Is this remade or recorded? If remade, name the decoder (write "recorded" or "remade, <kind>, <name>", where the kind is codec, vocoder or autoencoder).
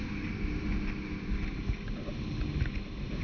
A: recorded